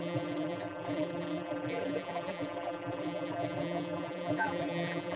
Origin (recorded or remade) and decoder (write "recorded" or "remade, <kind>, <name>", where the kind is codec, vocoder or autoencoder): remade, vocoder, BigVGAN v2